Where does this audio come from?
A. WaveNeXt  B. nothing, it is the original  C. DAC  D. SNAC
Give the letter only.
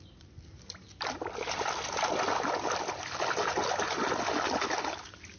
B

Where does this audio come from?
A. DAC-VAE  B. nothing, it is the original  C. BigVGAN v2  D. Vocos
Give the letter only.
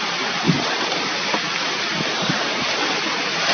B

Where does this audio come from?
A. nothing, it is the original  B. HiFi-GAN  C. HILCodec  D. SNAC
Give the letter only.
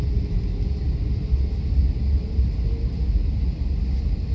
A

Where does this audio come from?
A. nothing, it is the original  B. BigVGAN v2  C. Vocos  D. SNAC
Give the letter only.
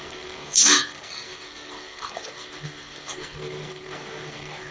D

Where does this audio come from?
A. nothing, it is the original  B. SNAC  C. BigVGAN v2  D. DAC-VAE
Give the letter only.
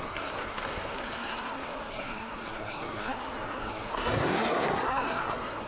B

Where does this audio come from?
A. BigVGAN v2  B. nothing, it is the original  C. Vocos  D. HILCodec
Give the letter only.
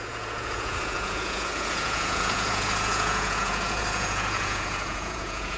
C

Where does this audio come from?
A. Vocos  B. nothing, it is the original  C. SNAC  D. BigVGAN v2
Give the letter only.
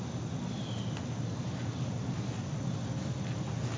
B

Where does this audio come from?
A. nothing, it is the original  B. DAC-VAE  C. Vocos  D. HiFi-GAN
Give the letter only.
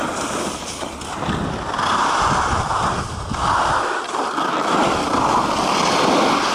A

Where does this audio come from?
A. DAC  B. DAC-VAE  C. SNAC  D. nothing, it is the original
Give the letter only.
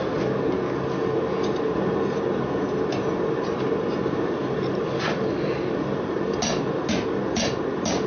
D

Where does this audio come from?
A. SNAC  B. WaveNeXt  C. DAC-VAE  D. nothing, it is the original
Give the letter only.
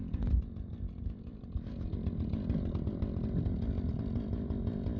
D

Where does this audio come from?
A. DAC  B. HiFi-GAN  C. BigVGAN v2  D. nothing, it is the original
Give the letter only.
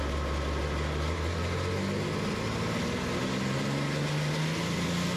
D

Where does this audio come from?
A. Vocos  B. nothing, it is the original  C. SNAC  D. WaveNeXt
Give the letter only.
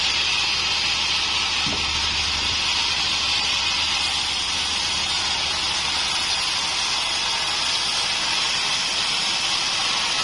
B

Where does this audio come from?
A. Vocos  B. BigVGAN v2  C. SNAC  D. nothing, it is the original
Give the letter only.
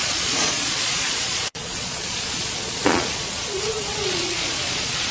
A